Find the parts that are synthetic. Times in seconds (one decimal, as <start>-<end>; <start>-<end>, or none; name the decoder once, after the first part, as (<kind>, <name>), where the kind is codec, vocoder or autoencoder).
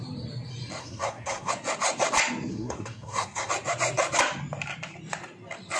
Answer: 0.8-1.5 (codec, SNAC); 2.5-3.5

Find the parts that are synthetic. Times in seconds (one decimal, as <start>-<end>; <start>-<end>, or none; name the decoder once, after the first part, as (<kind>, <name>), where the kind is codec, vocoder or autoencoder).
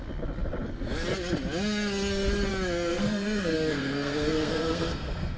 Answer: 2.9-5.4 (codec, SNAC)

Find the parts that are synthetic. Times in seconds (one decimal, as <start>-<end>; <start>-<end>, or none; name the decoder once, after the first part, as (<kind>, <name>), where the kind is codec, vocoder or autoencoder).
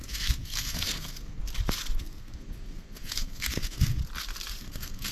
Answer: 0.0-1.4 (codec, SNAC); 2.0-4.0; 4.6-5.1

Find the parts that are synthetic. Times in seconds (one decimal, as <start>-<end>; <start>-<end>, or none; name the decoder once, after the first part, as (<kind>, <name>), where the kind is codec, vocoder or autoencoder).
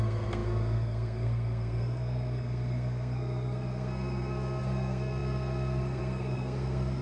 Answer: 0.0-7.0 (codec, SNAC)